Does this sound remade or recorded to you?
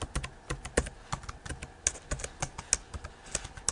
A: recorded